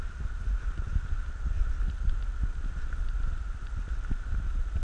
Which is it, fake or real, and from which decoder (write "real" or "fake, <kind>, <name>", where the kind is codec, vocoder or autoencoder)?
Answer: real